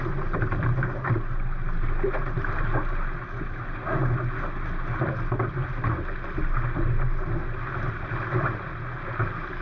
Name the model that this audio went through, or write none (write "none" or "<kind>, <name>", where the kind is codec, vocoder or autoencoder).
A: none